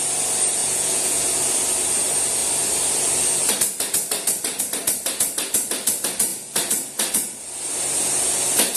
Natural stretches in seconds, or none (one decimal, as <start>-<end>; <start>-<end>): 0.0-0.6; 1.2-8.8